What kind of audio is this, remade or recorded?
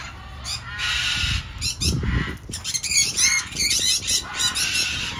recorded